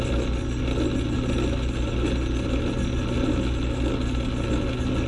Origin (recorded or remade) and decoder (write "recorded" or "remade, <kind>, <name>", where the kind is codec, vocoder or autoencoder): recorded